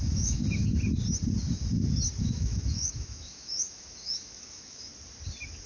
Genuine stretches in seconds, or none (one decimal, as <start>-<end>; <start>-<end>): 0.4-2.2; 4.9-5.7